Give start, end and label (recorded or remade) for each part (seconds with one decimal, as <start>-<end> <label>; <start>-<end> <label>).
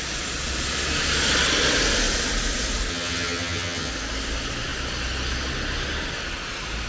0.0-2.9 recorded; 2.9-3.9 remade; 3.9-6.9 recorded